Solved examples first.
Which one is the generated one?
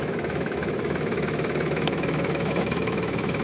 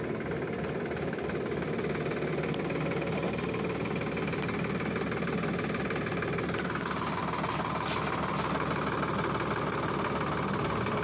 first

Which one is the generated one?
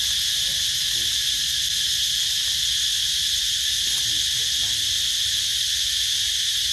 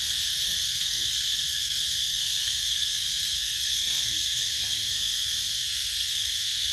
second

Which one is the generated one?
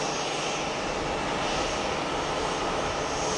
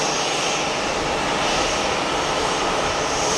second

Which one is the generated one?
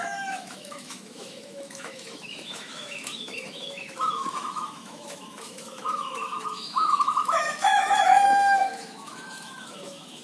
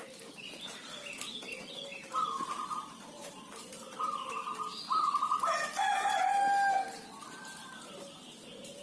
first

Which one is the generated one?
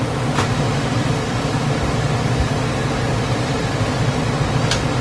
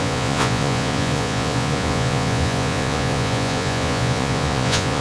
second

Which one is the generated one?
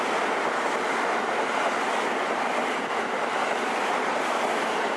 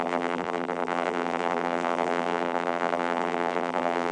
second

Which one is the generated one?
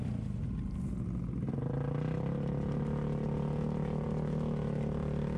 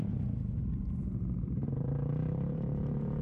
second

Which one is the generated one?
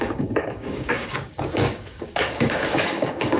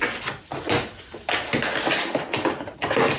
first